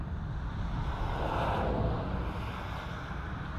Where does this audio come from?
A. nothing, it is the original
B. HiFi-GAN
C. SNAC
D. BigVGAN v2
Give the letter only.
A